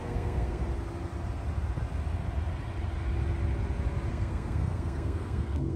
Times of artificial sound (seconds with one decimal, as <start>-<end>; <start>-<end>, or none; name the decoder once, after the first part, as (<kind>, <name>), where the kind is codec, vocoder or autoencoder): 0.0-0.6 (codec, SNAC); 4.1-5.8